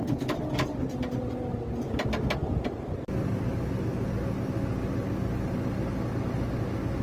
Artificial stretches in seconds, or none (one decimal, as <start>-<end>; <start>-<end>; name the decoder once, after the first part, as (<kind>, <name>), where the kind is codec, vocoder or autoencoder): none